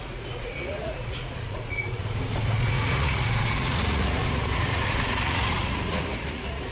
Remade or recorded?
remade